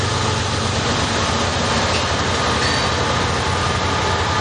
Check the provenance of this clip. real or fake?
real